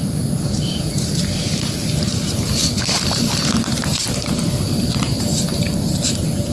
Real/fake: fake